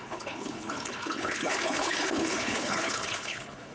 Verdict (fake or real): fake